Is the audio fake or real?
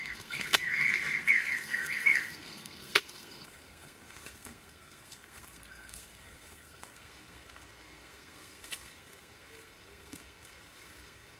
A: fake